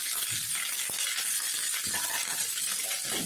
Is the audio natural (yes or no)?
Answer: yes